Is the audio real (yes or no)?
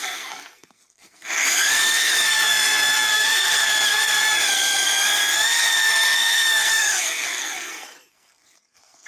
no